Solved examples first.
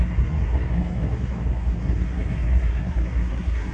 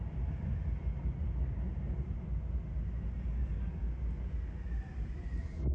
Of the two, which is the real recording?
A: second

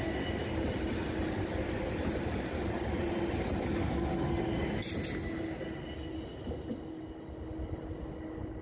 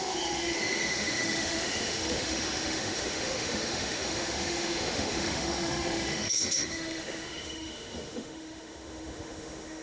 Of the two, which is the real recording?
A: first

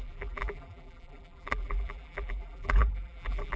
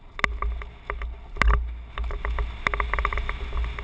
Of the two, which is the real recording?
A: second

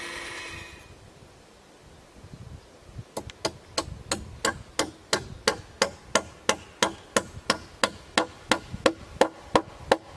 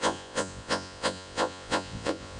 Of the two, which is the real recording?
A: first